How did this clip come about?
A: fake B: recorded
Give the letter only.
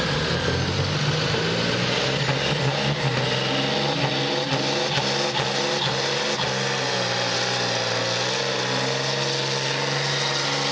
B